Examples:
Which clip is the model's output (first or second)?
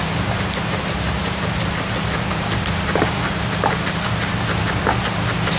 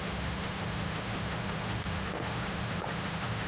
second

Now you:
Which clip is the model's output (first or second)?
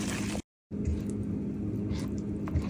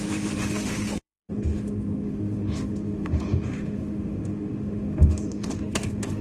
second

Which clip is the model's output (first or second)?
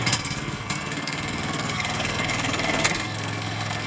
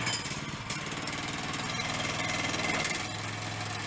first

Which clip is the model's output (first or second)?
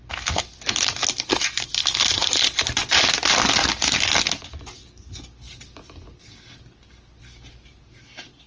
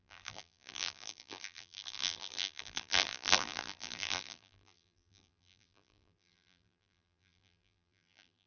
second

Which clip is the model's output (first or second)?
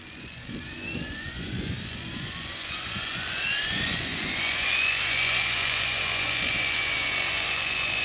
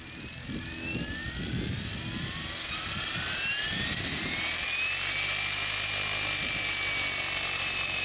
first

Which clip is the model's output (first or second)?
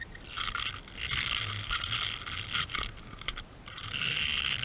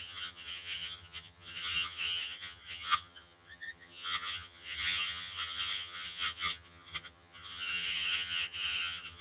second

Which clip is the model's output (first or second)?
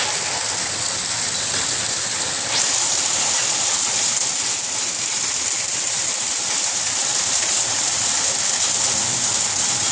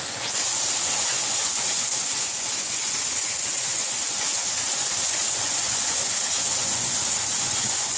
second